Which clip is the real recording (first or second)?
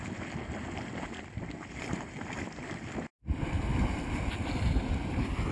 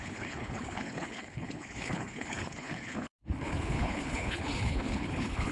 first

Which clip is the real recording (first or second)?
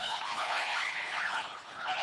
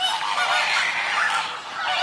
second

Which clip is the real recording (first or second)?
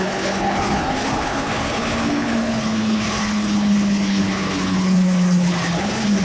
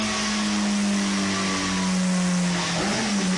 second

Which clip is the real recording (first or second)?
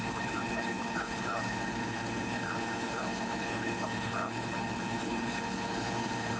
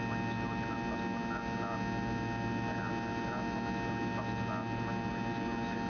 second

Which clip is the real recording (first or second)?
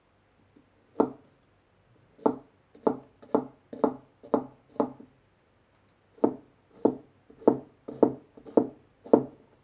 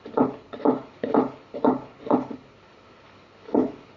first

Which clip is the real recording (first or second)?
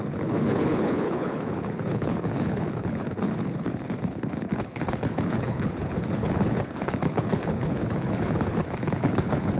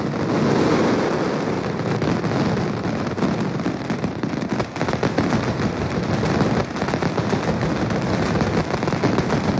second